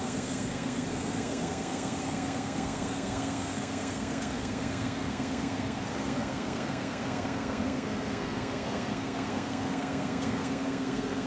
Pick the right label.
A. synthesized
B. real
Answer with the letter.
A